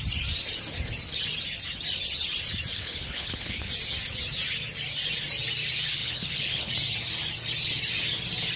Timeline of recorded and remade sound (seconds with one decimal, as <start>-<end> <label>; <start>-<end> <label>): 0.0-2.7 recorded; 2.7-3.7 remade; 3.7-6.0 recorded; 6.0-6.7 remade; 6.7-8.6 recorded